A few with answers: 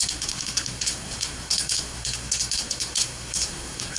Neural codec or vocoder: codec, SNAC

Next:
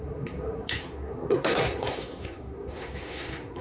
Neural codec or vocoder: codec, SNAC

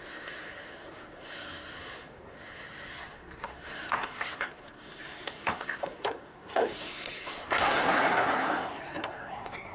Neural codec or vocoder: codec, SNAC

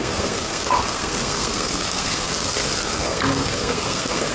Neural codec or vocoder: codec, SNAC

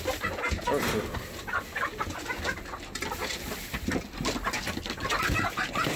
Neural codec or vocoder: none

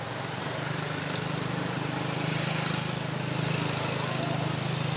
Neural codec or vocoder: none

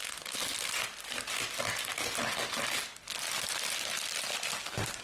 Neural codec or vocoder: none